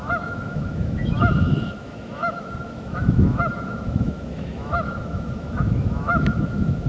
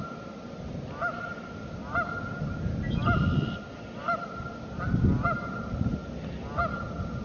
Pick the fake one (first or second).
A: first